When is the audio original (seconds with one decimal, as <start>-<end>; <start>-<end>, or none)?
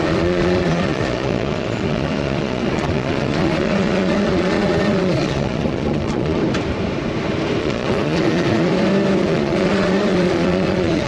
6.4-7.6; 8.7-9.2